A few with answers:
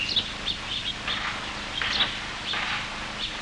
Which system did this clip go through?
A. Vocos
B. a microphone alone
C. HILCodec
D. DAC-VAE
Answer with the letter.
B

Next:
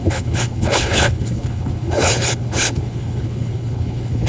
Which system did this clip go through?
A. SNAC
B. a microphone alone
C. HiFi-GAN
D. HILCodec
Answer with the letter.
D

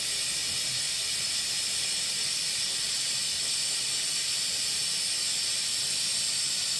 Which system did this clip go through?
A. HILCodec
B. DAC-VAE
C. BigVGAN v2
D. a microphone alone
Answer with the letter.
D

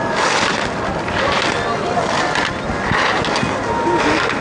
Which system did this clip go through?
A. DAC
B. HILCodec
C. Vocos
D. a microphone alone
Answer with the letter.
D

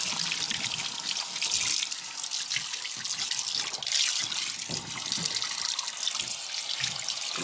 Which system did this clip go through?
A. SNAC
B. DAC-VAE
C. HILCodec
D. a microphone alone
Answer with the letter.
D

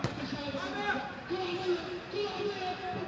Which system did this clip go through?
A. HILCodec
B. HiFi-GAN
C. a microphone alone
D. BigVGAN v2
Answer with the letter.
C